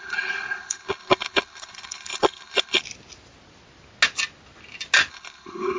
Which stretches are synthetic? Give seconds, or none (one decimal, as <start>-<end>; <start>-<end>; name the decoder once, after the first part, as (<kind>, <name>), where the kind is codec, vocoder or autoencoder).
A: 0.0-2.8 (codec, HILCodec); 5.1-5.8